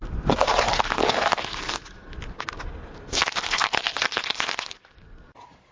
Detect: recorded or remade recorded